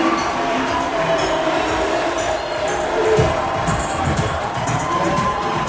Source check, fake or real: fake